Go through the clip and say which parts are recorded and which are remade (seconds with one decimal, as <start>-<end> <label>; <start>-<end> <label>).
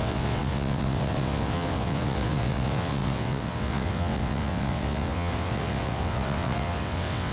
0.0-7.3 remade